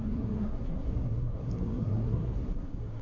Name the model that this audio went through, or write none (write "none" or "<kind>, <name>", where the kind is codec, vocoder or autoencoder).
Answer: codec, SNAC